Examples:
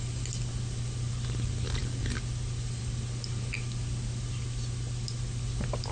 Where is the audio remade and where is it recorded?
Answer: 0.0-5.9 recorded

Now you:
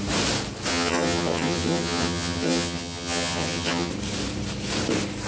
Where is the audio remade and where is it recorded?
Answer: 0.0-0.7 recorded; 0.7-3.9 remade; 3.9-5.3 recorded

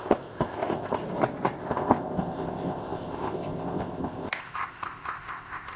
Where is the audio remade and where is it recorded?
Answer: 0.0-1.0 remade; 1.0-1.6 recorded; 1.6-5.8 remade

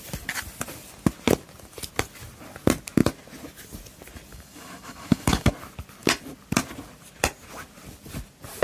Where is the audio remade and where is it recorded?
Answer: 0.0-4.3 recorded; 4.3-5.5 remade; 5.5-8.6 recorded

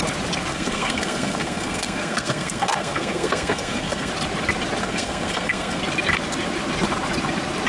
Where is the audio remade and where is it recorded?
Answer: 0.0-0.5 recorded; 0.5-4.1 remade; 4.1-4.8 recorded; 4.8-5.8 remade; 5.8-7.7 recorded

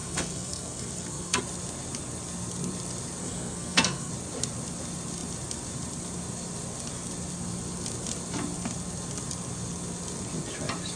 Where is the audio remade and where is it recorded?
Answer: 0.0-1.4 remade; 1.4-3.2 recorded; 3.2-4.1 remade; 4.1-11.0 recorded

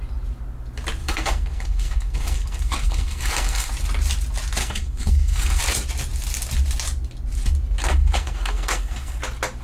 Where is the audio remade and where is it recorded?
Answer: 0.0-1.0 recorded; 1.0-3.7 remade; 3.7-4.6 recorded; 4.6-5.6 remade; 5.6-7.8 recorded; 7.8-9.2 remade; 9.2-9.6 recorded